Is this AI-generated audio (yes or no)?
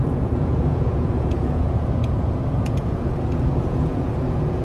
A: yes